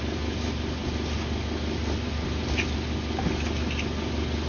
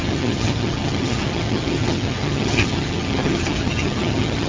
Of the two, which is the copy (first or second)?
second